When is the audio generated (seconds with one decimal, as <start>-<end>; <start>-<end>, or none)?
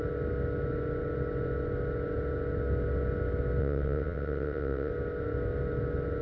3.6-4.9